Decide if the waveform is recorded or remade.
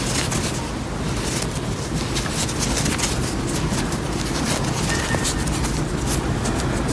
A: recorded